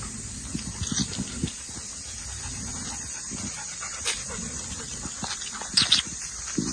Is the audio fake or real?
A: real